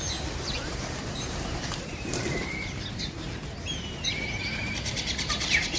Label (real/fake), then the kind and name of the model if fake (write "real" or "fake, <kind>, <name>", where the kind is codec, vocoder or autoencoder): fake, vocoder, BigVGAN v2